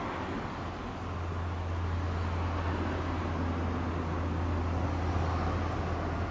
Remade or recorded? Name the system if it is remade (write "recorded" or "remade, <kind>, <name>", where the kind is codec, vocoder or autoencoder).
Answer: recorded